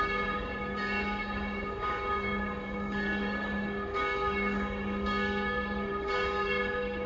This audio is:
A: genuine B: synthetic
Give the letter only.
B